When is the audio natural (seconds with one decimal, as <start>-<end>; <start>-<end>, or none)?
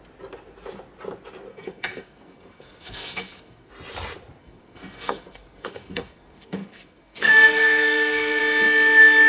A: 0.0-1.5; 3.7-4.4; 8.4-9.3